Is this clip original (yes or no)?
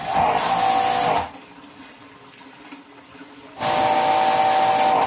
yes